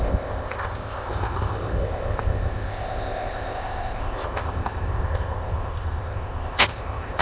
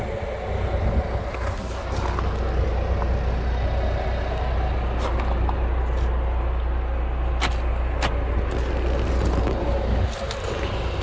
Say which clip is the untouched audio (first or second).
second